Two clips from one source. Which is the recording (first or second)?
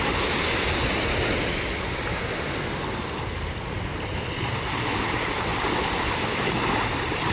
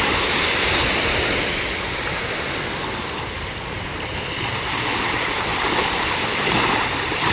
first